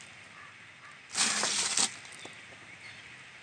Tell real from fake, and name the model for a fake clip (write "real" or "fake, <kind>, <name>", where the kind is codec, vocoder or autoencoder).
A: real